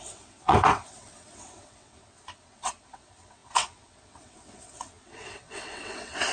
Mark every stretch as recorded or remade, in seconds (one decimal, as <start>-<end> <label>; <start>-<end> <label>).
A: 0.0-6.3 remade